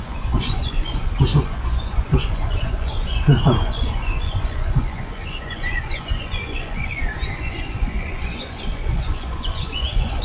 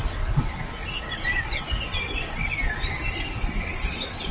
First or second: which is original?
second